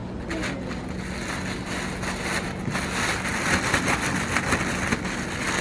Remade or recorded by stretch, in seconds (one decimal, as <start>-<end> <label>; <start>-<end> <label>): 0.0-5.6 recorded